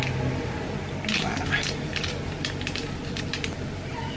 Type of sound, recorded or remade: recorded